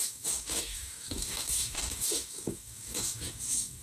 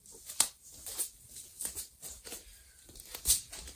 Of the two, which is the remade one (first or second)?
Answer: first